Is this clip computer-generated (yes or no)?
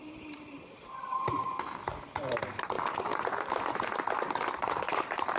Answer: yes